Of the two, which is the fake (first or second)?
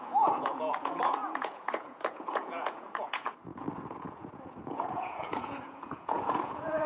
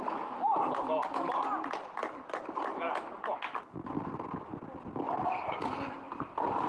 first